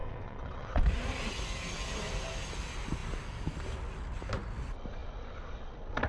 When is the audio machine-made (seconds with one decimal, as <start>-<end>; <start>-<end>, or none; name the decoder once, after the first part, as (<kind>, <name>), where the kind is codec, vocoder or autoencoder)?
0.0-0.8 (vocoder, WaveNeXt)